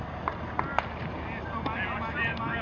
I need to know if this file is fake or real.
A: real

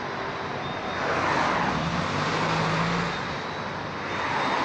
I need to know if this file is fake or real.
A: real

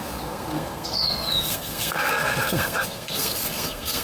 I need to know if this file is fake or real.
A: fake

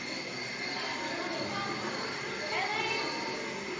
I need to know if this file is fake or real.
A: real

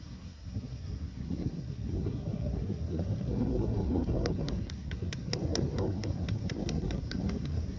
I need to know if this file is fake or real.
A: fake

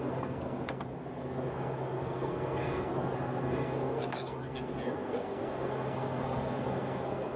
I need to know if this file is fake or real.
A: fake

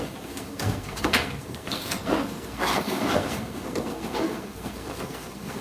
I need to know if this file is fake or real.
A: fake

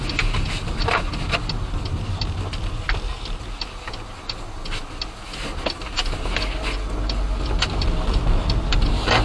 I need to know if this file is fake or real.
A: real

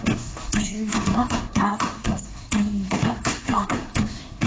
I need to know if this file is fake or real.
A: fake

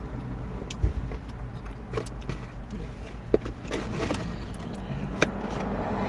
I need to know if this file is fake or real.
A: real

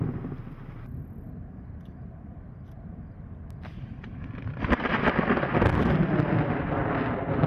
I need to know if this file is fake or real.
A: real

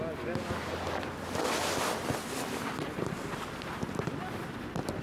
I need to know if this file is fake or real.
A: real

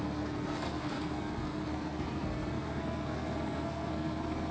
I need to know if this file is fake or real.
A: fake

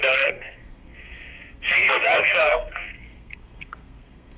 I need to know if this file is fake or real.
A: fake